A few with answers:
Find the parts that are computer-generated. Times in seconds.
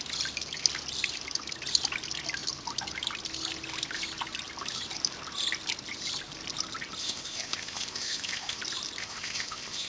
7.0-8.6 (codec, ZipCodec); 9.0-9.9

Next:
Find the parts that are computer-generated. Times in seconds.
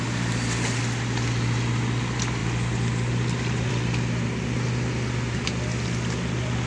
none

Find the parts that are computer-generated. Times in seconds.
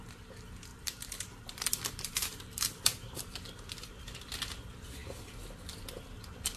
0.7-4.3 (vocoder, BigVGAN v2)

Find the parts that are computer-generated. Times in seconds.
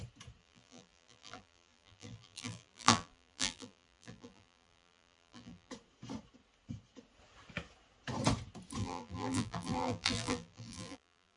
0.4-5.7 (vocoder, BigVGAN v2); 8.8-11.4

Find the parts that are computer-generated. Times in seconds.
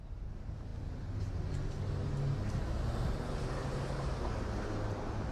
none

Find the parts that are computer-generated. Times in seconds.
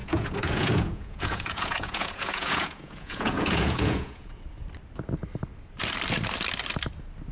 0.0-4.4 (vocoder, Vocos)